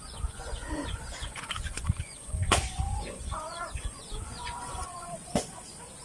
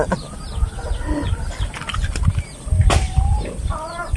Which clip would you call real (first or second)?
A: second